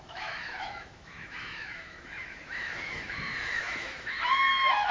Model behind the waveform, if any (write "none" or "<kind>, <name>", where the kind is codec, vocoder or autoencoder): autoencoder, DAC-VAE